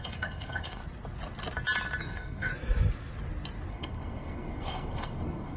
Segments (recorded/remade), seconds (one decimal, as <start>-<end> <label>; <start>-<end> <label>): 0.0-0.8 remade; 0.8-2.0 recorded; 2.0-2.5 remade; 2.5-3.7 recorded; 3.7-5.6 remade